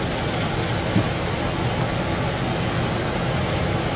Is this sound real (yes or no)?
yes